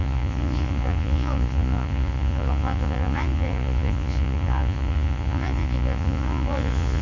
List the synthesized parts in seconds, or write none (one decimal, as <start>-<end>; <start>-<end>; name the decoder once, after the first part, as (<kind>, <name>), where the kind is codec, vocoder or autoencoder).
0.0-7.0 (vocoder, Vocos)